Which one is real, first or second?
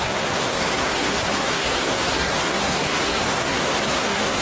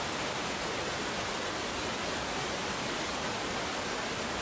second